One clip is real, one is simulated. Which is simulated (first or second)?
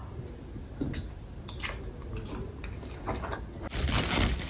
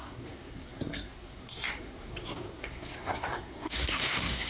second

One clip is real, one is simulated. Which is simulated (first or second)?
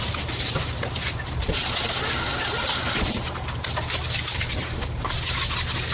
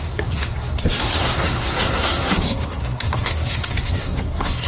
second